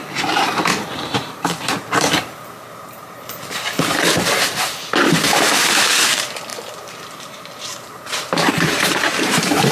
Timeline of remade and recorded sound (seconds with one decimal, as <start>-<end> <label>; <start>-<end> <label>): 0.0-9.7 remade